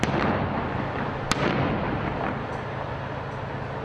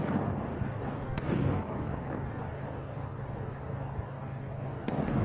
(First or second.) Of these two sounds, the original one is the first